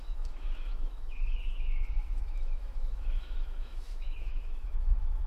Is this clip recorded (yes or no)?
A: no